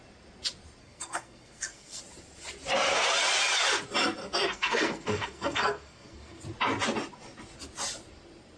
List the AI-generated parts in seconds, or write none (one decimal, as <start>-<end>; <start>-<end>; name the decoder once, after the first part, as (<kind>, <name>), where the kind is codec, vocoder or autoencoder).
0.8-2.0 (codec, SNAC); 4.2-6.4